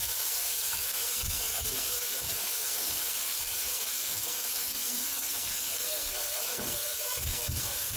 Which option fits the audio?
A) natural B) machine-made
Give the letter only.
B